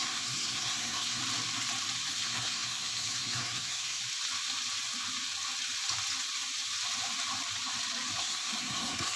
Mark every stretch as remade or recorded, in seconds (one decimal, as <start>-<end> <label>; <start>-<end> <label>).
0.0-1.2 remade; 1.2-2.1 recorded; 2.1-4.0 remade; 4.0-8.2 recorded; 8.2-9.2 remade